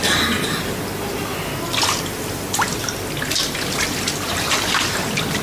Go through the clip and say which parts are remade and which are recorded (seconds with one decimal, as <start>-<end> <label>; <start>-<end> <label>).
0.0-5.4 recorded